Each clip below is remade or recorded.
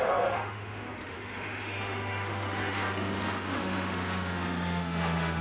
remade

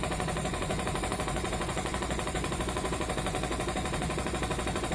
remade